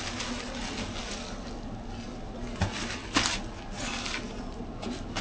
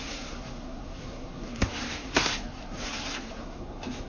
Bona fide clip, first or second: first